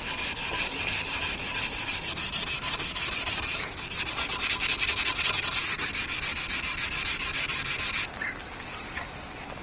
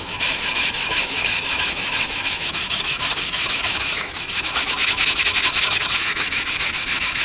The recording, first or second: first